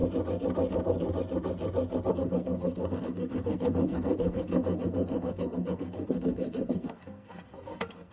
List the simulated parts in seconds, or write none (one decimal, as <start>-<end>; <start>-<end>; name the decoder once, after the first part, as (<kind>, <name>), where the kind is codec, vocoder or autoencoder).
2.1-8.1 (codec, SNAC)